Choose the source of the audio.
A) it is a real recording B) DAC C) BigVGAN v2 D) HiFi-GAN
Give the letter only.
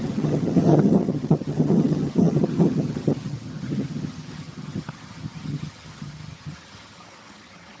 D